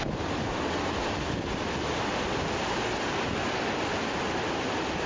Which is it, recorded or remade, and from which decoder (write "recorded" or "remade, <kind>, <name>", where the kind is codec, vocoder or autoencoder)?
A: recorded